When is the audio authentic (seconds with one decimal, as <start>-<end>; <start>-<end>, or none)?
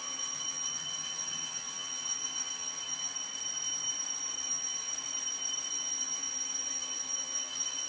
3.1-4.4; 4.9-5.7